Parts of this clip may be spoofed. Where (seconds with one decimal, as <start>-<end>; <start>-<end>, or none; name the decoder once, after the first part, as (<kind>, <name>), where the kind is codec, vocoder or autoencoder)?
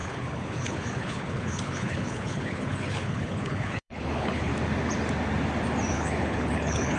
0.0-4.5 (codec, HILCodec); 5.9-7.0